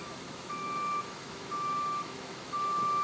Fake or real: fake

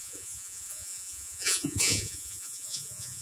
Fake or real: fake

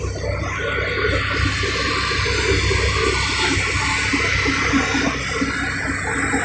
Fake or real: real